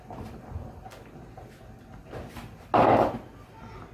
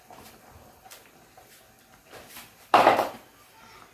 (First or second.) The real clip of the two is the first